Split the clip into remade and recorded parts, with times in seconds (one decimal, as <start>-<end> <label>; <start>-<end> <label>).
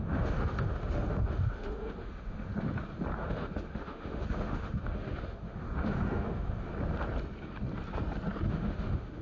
0.0-2.5 remade; 2.5-3.2 recorded; 3.2-6.7 remade; 6.7-8.5 recorded; 8.5-9.2 remade